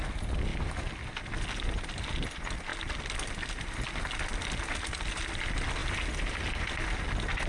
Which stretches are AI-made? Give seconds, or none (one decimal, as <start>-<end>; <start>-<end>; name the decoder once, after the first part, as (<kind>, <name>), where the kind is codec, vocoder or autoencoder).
none